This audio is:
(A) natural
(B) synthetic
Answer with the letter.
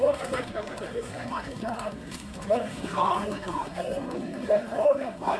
B